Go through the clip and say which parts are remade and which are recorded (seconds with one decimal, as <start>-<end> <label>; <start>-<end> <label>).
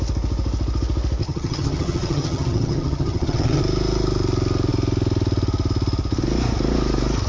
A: 0.0-1.2 recorded; 1.2-3.6 remade; 3.6-7.3 recorded